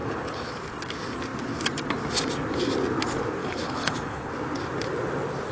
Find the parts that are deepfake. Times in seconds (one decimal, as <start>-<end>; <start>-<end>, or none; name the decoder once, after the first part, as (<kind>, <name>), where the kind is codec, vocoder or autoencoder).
0.0-0.5 (codec, HILCodec); 3.4-4.3